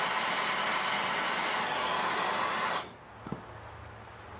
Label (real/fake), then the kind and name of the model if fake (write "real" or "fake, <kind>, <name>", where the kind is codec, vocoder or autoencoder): real